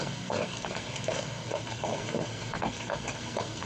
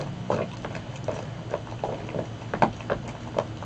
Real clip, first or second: second